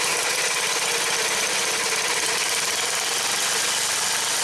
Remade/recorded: recorded